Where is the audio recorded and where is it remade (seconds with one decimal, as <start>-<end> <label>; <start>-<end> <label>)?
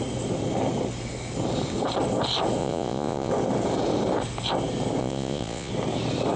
0.0-2.6 recorded; 2.6-3.3 remade; 3.3-5.0 recorded; 5.0-5.7 remade; 5.7-6.4 recorded